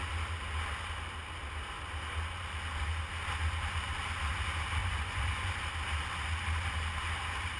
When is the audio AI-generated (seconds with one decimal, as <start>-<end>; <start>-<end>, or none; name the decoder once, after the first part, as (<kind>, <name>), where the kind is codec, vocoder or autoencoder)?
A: 4.8-5.6 (vocoder, Vocos)